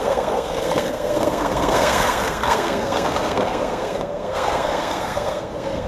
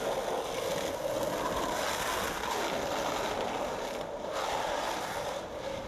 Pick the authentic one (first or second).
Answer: second